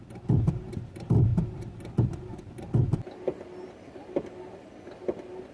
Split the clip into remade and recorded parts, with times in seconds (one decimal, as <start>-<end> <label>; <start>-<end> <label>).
0.0-5.5 recorded